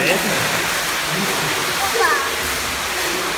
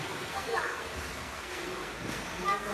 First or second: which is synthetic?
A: second